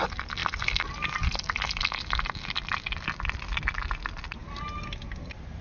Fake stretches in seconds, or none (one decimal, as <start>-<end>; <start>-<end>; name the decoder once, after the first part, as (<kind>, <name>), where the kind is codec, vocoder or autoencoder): none